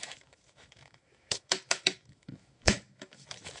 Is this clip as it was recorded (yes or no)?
no